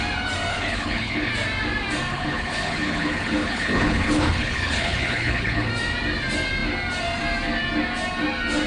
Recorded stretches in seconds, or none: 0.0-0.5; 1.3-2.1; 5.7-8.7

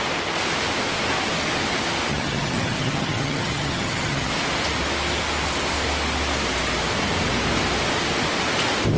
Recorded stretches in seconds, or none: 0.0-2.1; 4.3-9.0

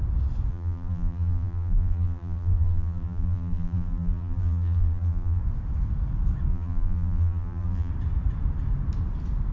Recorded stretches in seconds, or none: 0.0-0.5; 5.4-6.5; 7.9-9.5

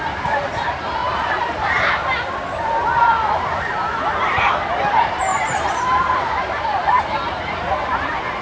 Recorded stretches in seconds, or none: 0.0-1.0; 1.9-5.3